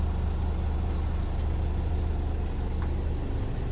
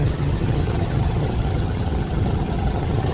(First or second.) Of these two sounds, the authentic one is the first